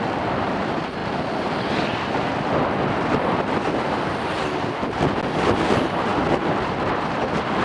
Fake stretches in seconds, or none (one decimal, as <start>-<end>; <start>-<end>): none